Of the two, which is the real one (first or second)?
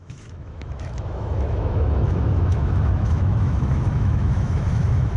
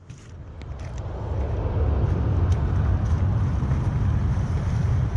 second